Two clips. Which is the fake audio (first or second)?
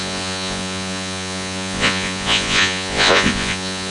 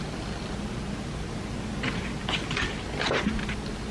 first